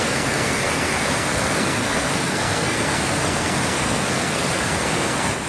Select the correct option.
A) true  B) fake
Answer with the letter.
B